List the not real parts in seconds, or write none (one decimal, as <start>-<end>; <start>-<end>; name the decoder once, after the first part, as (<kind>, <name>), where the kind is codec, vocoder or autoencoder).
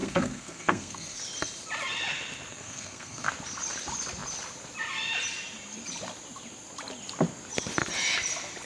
0.0-1.2 (codec, SNAC); 2.5-3.3